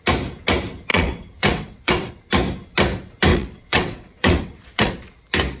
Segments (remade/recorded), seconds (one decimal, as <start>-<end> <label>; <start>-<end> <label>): 0.0-0.9 recorded; 0.9-2.1 remade; 2.1-3.3 recorded; 3.3-4.9 remade; 4.9-5.6 recorded